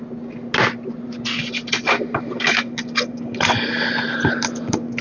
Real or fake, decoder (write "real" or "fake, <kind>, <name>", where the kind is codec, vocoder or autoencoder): real